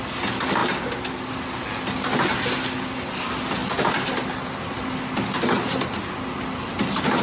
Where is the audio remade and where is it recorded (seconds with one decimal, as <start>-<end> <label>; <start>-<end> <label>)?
0.0-7.2 recorded